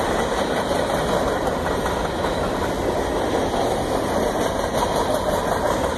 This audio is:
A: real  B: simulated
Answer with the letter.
A